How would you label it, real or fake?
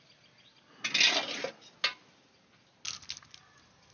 real